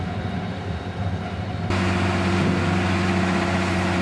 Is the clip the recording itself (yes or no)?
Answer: yes